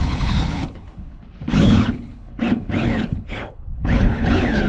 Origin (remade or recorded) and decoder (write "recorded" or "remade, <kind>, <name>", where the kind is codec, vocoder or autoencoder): remade, codec, HILCodec